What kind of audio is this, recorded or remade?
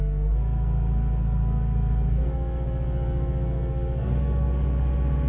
remade